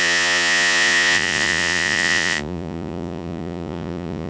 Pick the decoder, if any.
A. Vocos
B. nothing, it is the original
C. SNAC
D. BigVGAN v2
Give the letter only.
A